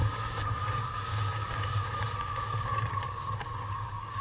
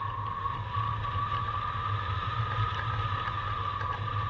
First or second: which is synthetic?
first